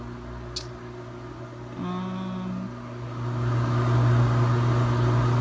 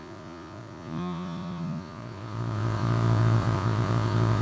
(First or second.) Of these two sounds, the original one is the first